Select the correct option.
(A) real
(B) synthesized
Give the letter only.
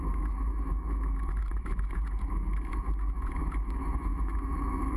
B